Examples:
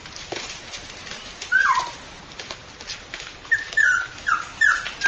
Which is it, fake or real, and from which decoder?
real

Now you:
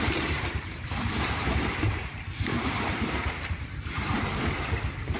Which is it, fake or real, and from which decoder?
fake, vocoder, BigVGAN v2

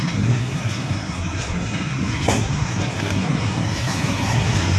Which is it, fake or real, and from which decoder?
fake, codec, SNAC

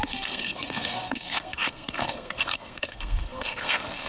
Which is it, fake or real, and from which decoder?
fake, codec, SNAC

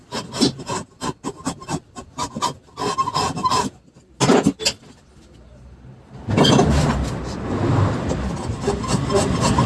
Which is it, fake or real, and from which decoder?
real